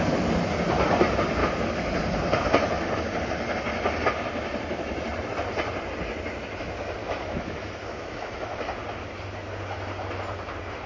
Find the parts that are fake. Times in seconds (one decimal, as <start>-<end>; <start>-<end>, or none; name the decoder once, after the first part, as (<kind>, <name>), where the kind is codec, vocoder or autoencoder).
7.0-8.6 (autoencoder, DAC-VAE)